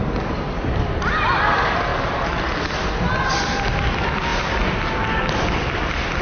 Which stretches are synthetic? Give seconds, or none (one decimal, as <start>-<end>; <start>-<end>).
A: none